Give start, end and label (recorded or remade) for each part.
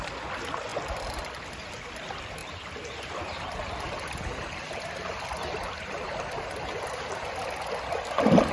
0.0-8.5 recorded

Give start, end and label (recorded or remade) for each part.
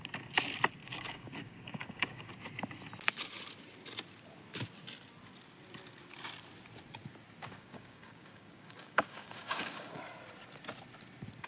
0.0-0.8 recorded; 0.8-2.3 remade; 2.3-7.4 recorded; 7.4-10.0 remade; 10.0-11.5 recorded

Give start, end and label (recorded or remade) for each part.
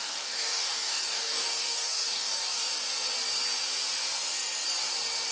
0.0-2.7 remade; 2.7-5.3 recorded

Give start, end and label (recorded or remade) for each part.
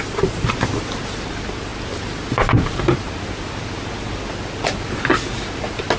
0.0-6.0 recorded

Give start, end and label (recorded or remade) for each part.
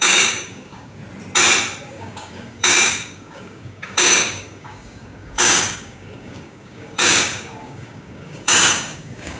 0.0-1.0 remade; 1.0-1.9 recorded; 1.9-9.4 remade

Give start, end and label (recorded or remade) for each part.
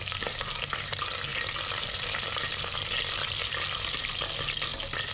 0.0-5.1 recorded